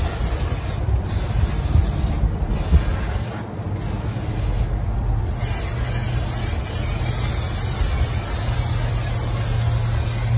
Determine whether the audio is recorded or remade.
recorded